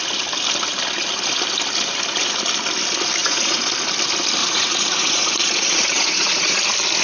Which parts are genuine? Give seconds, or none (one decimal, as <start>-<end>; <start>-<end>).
0.0-3.2; 3.7-4.4; 6.6-7.0